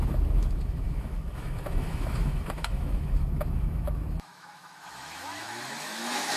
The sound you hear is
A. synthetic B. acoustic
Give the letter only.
A